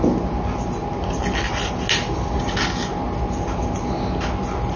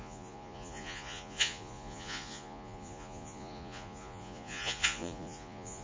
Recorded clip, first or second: first